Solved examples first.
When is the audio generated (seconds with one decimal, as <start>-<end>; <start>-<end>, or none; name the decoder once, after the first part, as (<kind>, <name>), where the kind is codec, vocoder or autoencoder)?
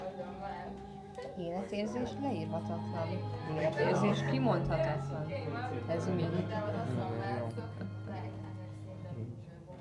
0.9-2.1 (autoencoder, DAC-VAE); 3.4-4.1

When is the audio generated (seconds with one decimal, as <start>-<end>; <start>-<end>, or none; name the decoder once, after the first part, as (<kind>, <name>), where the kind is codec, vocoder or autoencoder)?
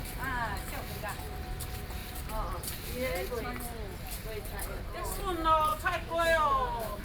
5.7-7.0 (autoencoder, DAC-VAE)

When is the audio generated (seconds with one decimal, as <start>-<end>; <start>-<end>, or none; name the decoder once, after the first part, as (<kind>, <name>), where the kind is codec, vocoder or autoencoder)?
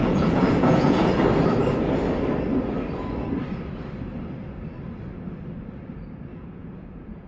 0.0-1.1 (vocoder, Vocos); 6.3-7.3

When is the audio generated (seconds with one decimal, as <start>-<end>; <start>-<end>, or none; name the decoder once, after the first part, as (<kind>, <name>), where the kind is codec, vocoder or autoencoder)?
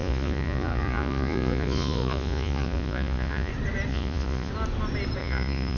0.0-3.5 (vocoder, Vocos); 3.9-4.5; 5.2-5.8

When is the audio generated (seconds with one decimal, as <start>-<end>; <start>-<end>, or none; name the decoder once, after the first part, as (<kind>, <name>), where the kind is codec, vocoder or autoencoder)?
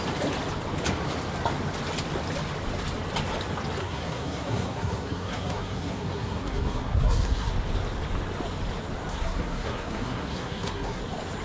3.8-7.5 (codec, SNAC); 9.1-11.0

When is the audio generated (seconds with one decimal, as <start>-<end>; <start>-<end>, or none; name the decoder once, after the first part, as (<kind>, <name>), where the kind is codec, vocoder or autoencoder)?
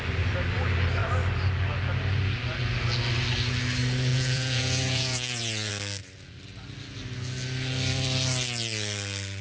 4.1-5.7 (vocoder, Vocos)